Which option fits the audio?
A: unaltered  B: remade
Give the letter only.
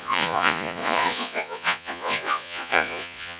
B